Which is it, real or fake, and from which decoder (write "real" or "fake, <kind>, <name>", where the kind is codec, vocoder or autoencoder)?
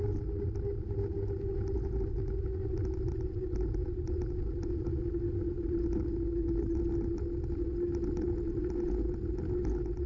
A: real